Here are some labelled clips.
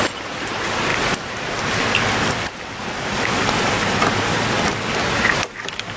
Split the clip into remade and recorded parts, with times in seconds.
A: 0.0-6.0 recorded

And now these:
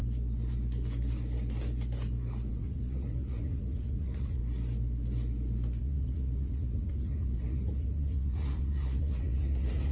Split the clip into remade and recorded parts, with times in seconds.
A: 0.0-2.5 recorded; 2.5-4.4 remade; 4.4-5.8 recorded; 5.8-9.9 remade

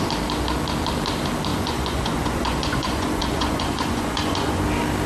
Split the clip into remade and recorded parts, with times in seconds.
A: 0.0-1.5 recorded; 1.5-4.6 remade; 4.6-5.1 recorded

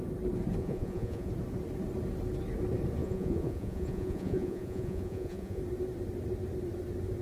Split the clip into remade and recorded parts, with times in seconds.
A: 0.0-0.6 recorded; 0.6-1.3 remade; 1.3-3.0 recorded; 3.0-5.6 remade; 5.6-7.2 recorded